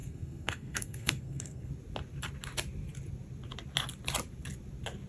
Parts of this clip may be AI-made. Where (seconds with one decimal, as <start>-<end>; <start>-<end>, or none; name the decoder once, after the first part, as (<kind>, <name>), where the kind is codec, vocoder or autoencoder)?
0.0-1.7 (codec, SNAC)